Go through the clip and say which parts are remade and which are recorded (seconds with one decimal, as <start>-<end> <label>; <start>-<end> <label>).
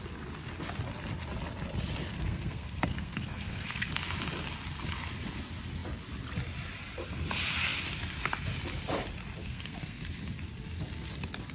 0.0-2.1 recorded; 2.1-3.9 remade; 3.9-9.4 recorded; 9.4-10.0 remade; 10.0-11.5 recorded